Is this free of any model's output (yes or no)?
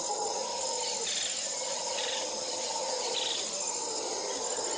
yes